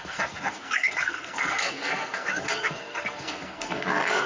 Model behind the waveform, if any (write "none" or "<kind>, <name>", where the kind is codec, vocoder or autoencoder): codec, SNAC